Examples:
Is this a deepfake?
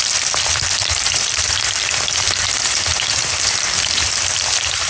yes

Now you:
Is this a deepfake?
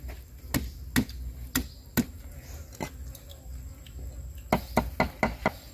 no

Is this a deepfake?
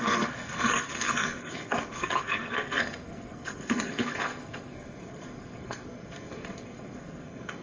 yes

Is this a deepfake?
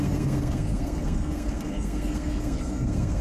yes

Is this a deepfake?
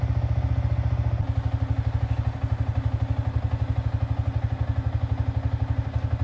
no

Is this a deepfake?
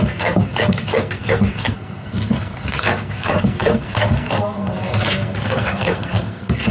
yes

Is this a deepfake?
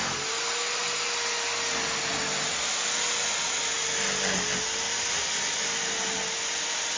no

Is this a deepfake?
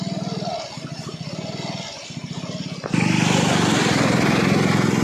no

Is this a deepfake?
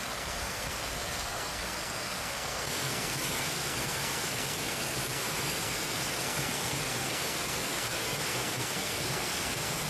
yes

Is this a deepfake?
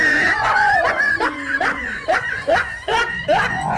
yes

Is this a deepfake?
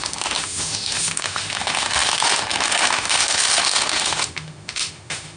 yes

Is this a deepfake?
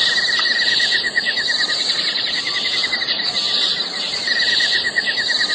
no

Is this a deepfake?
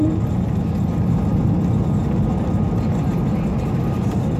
no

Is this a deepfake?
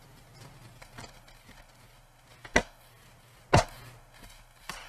no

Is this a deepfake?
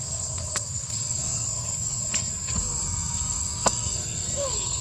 yes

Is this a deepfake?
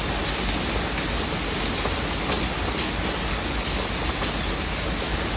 no